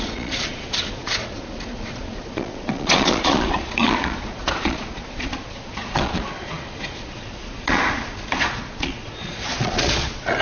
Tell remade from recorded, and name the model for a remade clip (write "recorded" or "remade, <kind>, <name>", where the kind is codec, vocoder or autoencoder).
remade, vocoder, Vocos